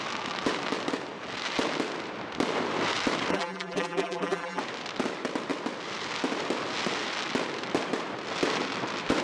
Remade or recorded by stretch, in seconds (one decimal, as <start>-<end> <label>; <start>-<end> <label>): 0.0-3.3 recorded; 3.3-4.6 remade; 4.6-9.2 recorded